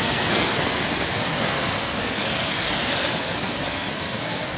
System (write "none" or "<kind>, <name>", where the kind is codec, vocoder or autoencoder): codec, SNAC